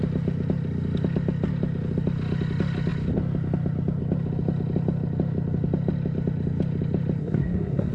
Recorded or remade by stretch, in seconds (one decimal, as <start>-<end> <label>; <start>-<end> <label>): 0.0-7.2 recorded; 7.2-7.9 remade